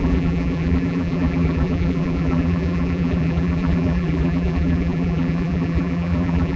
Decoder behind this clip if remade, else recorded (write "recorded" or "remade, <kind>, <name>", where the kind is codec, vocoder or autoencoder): remade, vocoder, BigVGAN v2